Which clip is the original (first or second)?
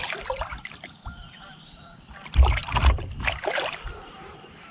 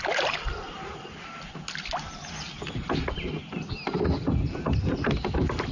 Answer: second